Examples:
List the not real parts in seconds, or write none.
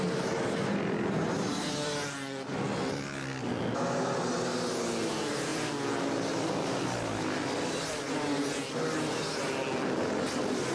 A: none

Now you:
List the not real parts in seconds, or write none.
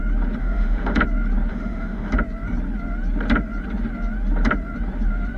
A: 0.4-1.0 (autoencoder, DAC-VAE); 1.5-2.1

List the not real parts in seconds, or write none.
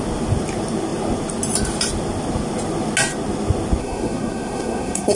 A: 3.8-5.2 (codec, SNAC)